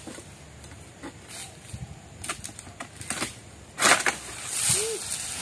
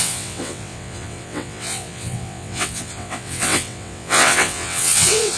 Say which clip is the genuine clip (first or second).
first